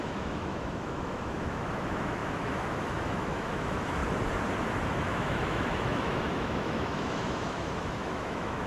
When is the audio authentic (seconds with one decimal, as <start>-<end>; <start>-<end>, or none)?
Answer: 4.0-5.0